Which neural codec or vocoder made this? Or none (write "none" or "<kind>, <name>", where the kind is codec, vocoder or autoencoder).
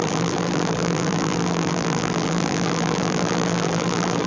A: vocoder, BigVGAN v2